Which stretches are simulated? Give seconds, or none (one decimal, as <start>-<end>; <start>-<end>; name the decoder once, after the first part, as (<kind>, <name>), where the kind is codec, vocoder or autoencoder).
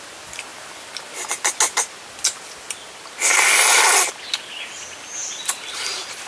none